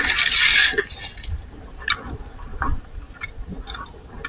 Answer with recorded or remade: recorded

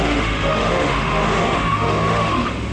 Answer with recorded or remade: remade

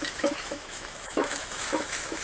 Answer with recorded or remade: remade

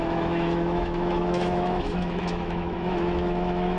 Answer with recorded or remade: remade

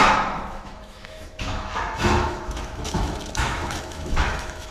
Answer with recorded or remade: remade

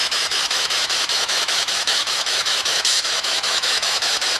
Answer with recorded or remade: remade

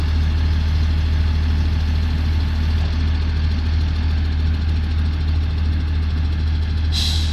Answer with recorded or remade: recorded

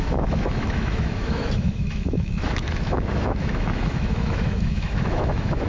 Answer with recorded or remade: remade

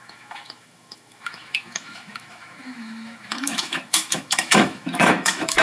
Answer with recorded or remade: remade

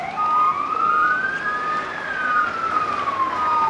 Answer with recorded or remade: recorded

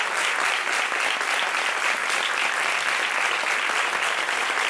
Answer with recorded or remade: recorded